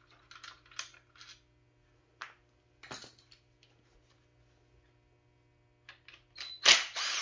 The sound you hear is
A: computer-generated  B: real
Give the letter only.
B